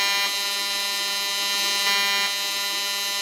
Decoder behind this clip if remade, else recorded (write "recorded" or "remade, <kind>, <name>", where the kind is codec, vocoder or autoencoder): recorded